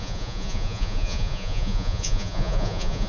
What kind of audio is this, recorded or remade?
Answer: remade